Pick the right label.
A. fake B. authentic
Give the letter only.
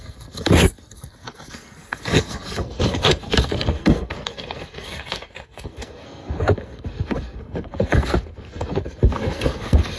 A